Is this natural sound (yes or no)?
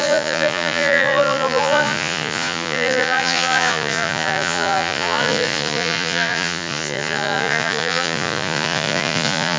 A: no